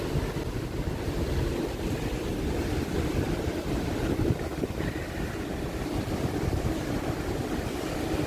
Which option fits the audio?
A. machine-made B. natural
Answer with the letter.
A